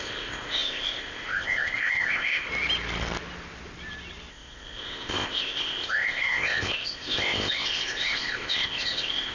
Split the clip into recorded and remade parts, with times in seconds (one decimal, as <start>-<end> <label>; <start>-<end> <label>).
0.0-2.5 remade; 2.5-4.3 recorded; 4.3-9.3 remade